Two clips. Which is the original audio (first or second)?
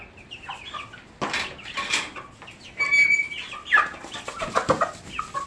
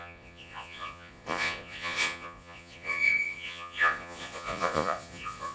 first